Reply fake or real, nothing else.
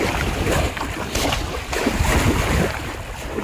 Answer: real